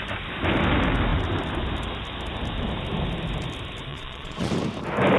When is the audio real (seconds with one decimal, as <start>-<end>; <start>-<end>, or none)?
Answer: 0.0-3.9; 4.5-5.2